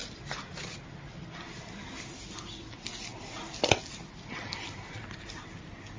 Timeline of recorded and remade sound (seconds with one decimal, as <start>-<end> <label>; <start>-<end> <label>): 0.0-6.0 recorded